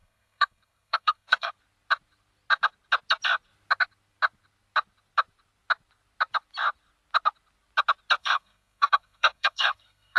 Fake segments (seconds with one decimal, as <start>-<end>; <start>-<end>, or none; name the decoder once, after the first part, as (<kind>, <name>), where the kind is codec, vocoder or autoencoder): 0.0-1.5 (codec, SNAC); 8.2-10.2